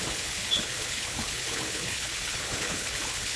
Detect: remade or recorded remade